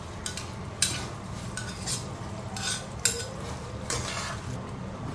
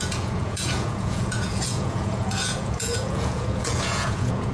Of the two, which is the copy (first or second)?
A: second